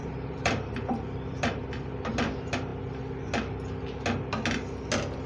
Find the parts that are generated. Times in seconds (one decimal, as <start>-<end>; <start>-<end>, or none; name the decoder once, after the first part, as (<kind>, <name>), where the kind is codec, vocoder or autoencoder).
0.0-2.1 (vocoder, BigVGAN v2)